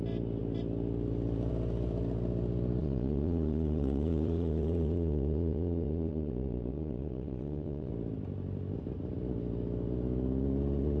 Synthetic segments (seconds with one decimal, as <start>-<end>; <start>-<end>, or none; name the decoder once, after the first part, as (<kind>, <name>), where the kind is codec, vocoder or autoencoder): 2.8-7.9 (vocoder, Vocos)